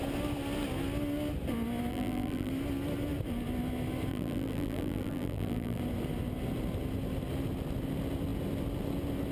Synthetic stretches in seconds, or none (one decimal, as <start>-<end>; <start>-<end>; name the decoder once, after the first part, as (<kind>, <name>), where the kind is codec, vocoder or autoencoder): 1.9-2.5 (vocoder, BigVGAN v2); 4.1-5.8